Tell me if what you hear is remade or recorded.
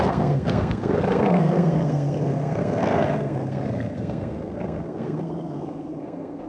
remade